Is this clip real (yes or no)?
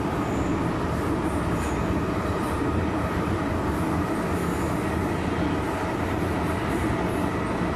yes